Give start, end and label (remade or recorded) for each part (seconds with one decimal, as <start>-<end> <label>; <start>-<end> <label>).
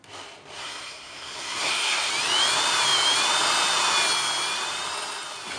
0.0-0.6 recorded; 0.6-2.1 remade; 2.1-5.6 recorded